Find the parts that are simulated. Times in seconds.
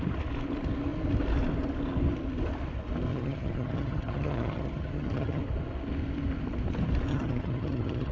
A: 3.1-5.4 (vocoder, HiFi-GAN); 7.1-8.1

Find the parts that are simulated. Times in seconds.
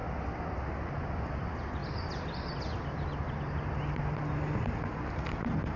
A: none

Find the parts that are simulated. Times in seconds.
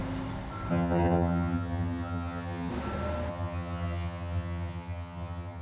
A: 0.7-2.7 (vocoder, HiFi-GAN); 3.3-5.6